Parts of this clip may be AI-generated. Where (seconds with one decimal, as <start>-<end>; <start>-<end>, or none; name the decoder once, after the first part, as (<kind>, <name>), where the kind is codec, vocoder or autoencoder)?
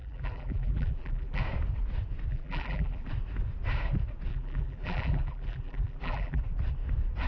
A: 0.0-1.4 (vocoder, BigVGAN v2); 2.3-3.1; 4.3-6.4